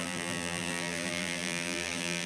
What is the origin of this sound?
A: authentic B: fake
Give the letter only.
B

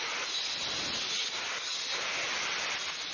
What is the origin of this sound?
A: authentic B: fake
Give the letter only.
A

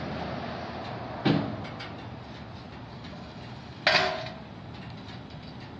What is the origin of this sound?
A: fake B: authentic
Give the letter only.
B